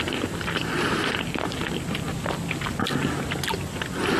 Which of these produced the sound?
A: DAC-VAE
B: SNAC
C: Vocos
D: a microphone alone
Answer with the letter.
D